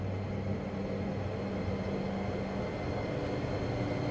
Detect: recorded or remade recorded